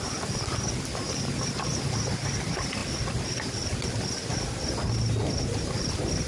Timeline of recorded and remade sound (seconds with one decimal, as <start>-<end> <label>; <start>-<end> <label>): 0.0-6.3 recorded